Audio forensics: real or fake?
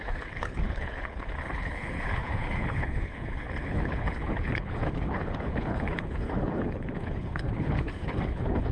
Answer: fake